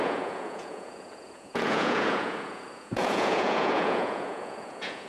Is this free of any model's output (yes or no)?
no